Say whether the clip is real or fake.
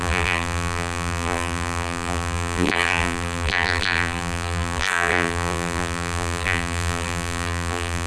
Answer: fake